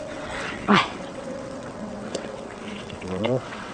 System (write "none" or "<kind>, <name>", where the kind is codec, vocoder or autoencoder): vocoder, WaveNeXt